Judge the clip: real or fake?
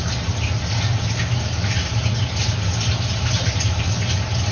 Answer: real